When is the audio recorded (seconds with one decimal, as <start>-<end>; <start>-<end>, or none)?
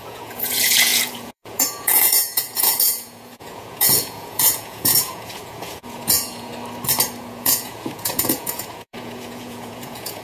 6.5-7.2